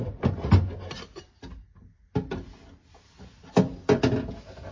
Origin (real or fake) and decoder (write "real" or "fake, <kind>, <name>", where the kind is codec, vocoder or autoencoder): real